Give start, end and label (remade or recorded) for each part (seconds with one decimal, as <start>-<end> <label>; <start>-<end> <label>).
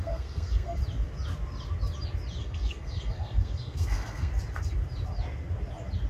0.0-0.8 remade; 0.8-2.4 recorded; 2.4-4.3 remade; 4.3-6.1 recorded